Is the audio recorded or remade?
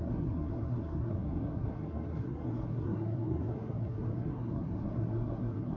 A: remade